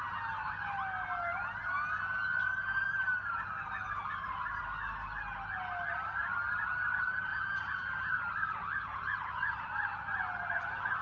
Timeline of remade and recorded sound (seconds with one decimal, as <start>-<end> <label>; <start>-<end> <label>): 0.0-7.3 recorded; 7.3-8.2 remade; 8.2-11.0 recorded